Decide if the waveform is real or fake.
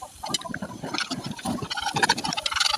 fake